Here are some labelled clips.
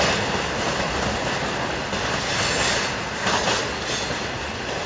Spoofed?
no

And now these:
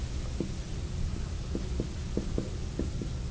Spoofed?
no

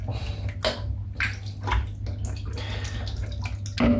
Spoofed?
no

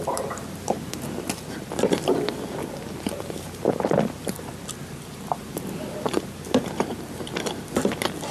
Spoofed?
yes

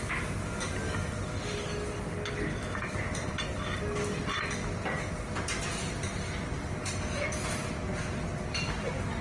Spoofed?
no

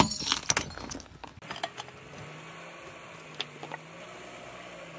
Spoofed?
no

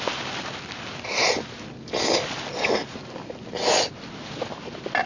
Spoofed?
no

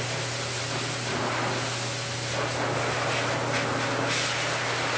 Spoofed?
no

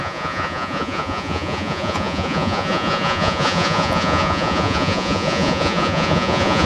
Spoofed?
yes